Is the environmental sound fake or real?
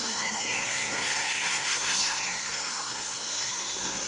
fake